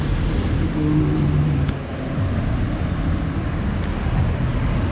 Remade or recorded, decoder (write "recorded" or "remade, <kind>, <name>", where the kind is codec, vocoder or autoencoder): recorded